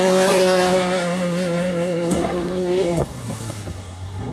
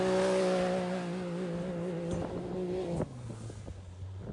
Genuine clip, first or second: second